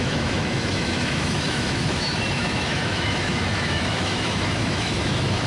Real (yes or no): no